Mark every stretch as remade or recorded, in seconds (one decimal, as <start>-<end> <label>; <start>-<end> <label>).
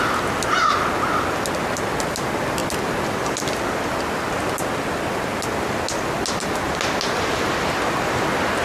0.0-8.6 recorded